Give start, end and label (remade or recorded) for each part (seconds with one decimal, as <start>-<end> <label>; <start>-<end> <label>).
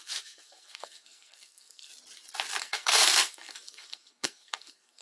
0.0-1.9 remade; 1.9-2.6 recorded; 2.6-5.0 remade